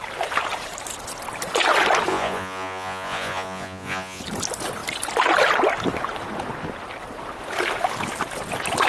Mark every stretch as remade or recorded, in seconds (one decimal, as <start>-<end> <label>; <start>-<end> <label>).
0.0-2.1 recorded; 2.1-4.2 remade; 4.2-8.9 recorded